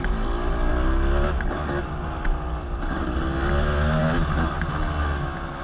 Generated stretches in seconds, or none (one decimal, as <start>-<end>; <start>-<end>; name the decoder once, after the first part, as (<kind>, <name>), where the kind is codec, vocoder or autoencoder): none